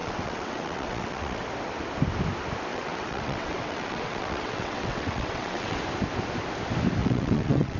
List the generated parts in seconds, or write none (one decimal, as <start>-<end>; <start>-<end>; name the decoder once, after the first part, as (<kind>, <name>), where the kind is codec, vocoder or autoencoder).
0.0-1.4 (vocoder, WaveNeXt); 2.7-5.8; 7.0-7.8